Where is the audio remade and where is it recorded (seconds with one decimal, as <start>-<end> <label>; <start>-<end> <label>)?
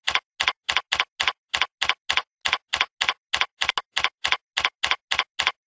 0.0-5.7 recorded